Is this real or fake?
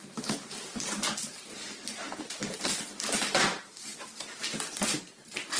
real